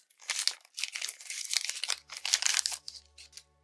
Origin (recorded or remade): recorded